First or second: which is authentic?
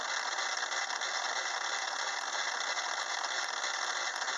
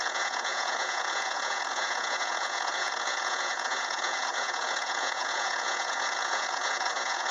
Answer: first